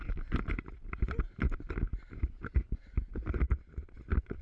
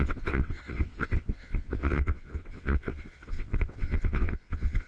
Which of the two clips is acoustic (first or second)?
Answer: first